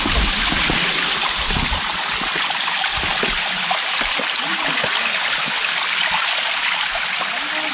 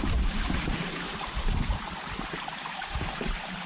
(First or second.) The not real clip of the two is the second